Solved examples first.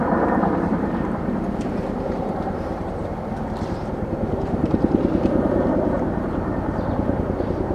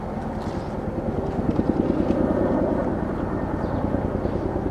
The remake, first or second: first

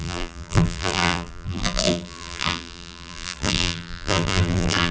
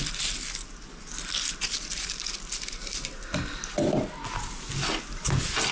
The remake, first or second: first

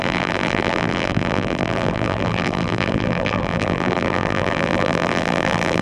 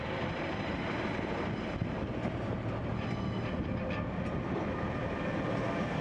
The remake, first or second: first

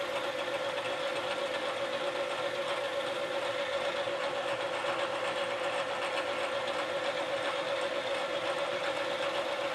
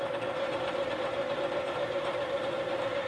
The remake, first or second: second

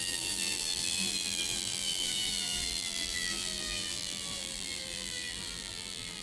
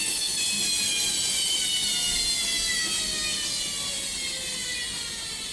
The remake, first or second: first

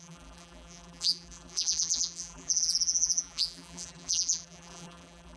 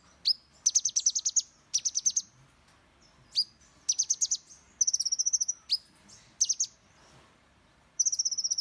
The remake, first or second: first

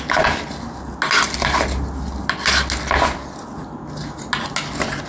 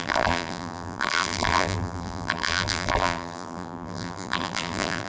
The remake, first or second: second